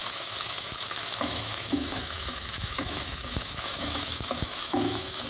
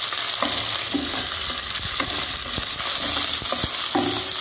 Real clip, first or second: second